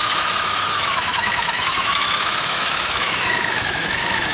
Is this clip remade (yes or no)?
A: yes